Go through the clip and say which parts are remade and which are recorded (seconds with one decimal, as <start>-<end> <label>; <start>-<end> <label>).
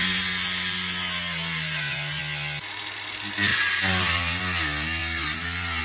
0.0-2.2 remade; 2.2-3.5 recorded; 3.5-4.4 remade; 4.4-5.0 recorded; 5.0-5.8 remade